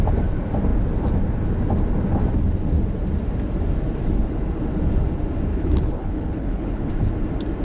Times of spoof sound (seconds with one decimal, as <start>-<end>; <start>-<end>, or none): 5.5-6.9

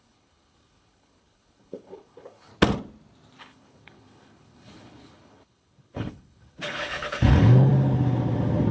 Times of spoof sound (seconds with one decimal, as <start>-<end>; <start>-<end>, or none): 0.0-2.5; 3.4-7.7

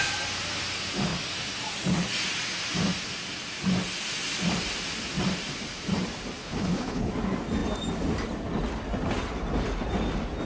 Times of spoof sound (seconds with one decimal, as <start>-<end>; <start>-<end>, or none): 6.4-7.1

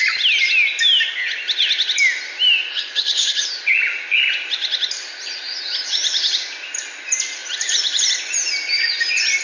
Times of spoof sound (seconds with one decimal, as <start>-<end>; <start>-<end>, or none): 2.7-3.5

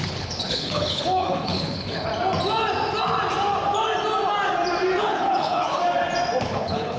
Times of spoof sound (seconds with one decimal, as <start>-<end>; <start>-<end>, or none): 0.0-2.1; 5.0-5.8; 6.4-7.0

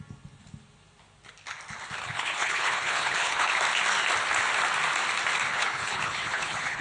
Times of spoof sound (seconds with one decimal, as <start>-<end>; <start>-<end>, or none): 2.0-3.5; 5.5-6.8

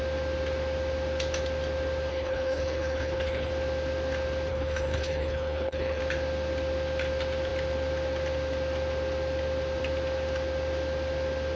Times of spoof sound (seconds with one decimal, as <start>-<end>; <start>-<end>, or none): 2.1-3.5; 4.5-6.0

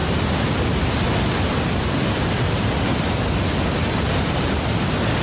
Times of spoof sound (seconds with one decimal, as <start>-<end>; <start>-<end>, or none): none